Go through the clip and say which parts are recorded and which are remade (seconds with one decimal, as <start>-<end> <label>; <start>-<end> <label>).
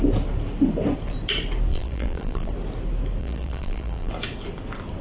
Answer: 0.0-1.7 recorded; 1.7-2.5 remade; 2.5-3.2 recorded; 3.2-4.1 remade; 4.1-5.0 recorded